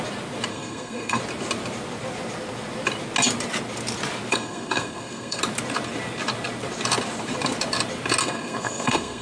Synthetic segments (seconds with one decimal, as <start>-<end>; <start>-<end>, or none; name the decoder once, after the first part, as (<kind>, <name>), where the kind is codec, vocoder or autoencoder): 0.5-1.2 (codec, SNAC); 4.3-5.4; 8.2-9.2